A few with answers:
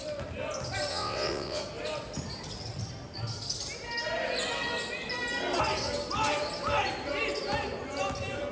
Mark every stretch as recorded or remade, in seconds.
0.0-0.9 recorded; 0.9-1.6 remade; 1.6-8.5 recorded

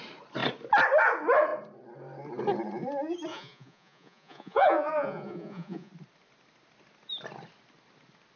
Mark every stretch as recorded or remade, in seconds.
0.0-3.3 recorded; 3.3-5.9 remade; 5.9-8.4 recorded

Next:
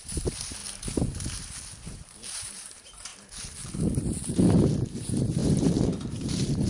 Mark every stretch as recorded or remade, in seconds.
0.0-0.6 remade; 0.6-1.8 recorded; 1.8-3.1 remade; 3.1-5.0 recorded; 5.0-5.4 remade; 5.4-6.0 recorded; 6.0-6.7 remade